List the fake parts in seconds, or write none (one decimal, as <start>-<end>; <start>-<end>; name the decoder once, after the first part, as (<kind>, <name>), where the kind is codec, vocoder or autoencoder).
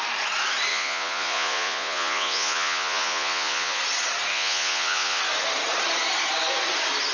0.7-3.8 (vocoder, Vocos); 4.3-5.2